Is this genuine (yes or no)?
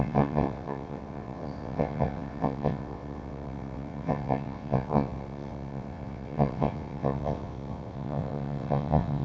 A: no